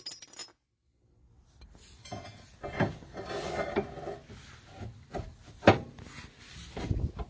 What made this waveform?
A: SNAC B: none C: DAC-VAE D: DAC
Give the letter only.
B